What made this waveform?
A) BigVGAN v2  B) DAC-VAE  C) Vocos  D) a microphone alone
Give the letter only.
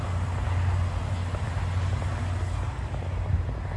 D